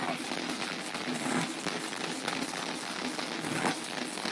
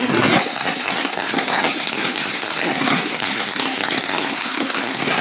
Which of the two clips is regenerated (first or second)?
second